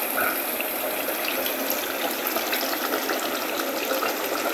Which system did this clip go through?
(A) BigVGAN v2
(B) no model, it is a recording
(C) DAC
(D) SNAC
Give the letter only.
B